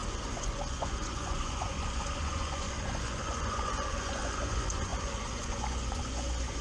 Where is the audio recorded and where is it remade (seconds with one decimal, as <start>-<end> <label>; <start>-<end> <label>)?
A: 0.0-6.6 remade